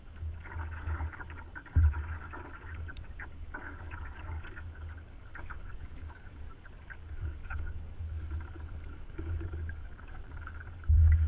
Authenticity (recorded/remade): remade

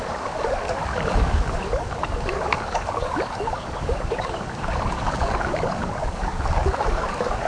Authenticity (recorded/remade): remade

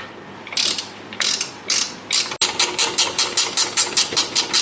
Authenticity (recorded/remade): recorded